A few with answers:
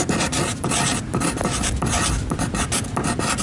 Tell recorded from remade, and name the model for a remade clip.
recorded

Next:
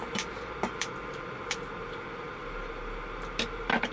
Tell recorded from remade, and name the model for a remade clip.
remade, vocoder, BigVGAN v2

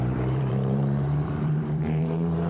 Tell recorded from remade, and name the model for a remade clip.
remade, vocoder, BigVGAN v2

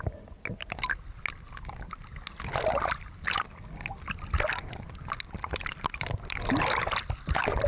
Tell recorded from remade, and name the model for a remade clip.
recorded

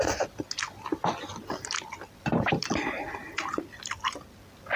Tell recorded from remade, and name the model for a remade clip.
recorded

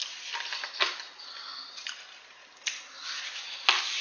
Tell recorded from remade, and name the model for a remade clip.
recorded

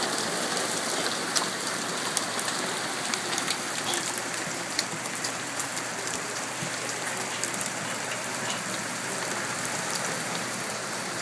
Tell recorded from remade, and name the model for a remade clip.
remade, vocoder, BigVGAN v2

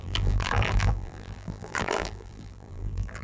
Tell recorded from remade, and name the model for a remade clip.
remade, vocoder, BigVGAN v2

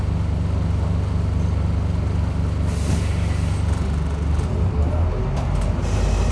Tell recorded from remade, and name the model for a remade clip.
recorded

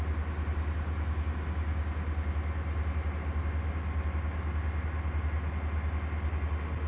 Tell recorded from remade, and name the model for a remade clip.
recorded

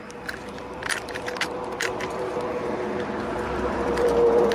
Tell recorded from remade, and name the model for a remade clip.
remade, vocoder, BigVGAN v2